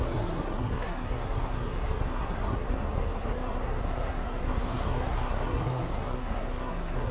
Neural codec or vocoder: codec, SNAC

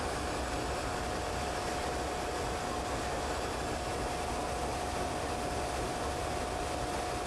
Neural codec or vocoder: none